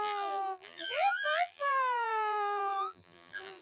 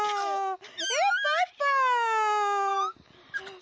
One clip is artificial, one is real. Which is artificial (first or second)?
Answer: first